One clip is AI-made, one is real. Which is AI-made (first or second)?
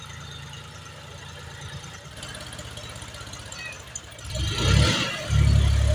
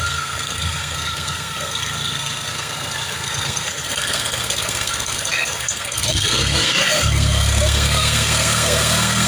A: second